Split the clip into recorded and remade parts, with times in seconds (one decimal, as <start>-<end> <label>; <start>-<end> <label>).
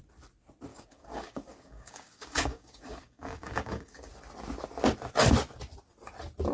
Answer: 0.0-0.7 recorded; 0.7-4.1 remade; 4.1-6.5 recorded